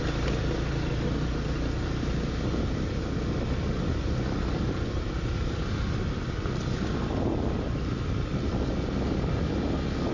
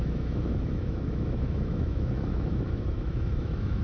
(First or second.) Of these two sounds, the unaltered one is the first